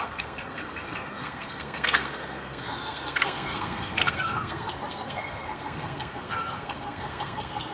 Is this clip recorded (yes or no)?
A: no